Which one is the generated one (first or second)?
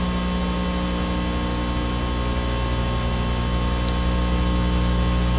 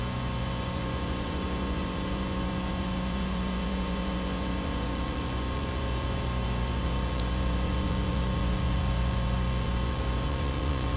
second